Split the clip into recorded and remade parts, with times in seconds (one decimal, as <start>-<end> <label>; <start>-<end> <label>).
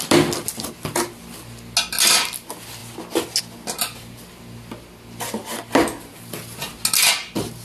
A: 0.0-7.6 recorded